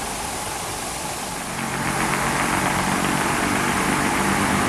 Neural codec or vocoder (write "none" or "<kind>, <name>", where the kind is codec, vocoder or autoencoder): none